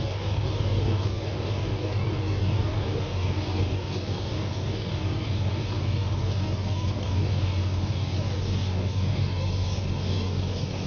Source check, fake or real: fake